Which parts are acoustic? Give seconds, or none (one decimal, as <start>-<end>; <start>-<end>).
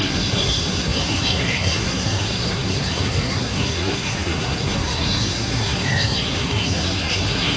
none